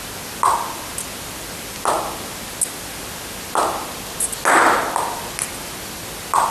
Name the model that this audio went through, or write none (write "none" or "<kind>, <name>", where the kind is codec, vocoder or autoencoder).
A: none